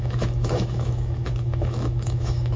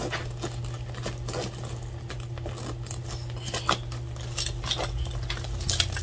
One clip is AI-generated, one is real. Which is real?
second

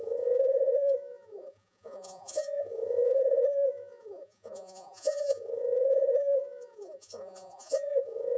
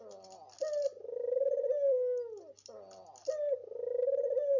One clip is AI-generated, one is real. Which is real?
second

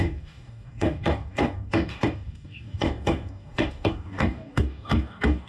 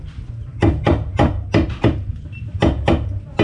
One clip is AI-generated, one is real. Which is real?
second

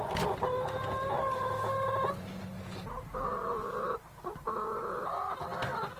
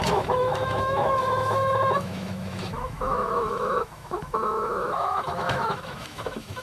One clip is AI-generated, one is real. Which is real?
first